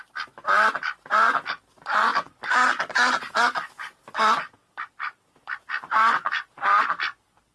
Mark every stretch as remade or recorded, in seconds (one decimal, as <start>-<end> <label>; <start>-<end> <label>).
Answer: 0.0-7.5 recorded